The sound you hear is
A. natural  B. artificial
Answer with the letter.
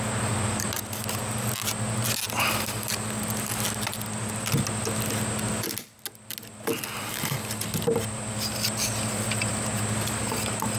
A